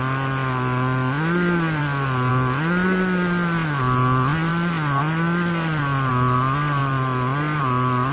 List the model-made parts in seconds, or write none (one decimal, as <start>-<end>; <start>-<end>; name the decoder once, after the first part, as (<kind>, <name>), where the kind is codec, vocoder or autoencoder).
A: none